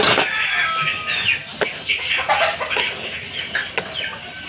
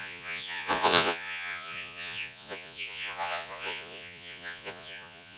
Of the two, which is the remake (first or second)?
second